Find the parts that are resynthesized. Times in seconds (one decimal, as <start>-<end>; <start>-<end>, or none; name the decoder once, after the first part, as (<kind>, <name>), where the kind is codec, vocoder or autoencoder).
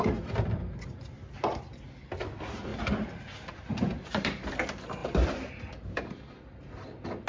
2.7-4.5 (vocoder, BigVGAN v2); 5.0-6.0